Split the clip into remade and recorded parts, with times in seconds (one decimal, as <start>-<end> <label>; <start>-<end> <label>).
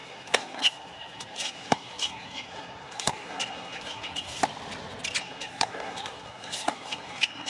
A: 0.0-4.4 remade; 4.4-5.2 recorded; 5.2-7.5 remade